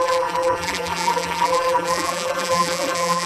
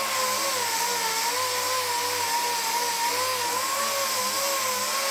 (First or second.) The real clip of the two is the second